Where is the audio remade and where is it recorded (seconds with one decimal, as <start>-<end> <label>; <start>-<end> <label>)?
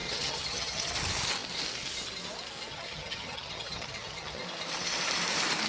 0.0-0.9 remade; 0.9-2.7 recorded; 2.7-4.4 remade; 4.4-5.7 recorded